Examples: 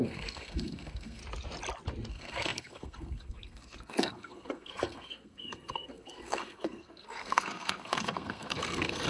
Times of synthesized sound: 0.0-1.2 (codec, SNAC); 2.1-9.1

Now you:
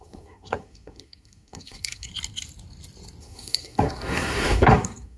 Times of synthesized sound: 0.0-2.1 (codec, SNAC); 3.2-5.2